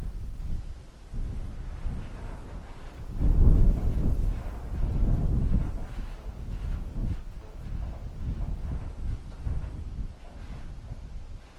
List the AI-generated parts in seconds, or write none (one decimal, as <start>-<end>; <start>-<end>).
none